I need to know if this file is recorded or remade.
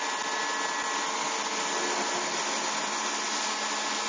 recorded